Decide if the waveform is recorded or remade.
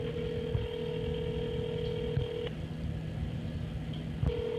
recorded